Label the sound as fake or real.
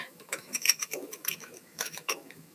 fake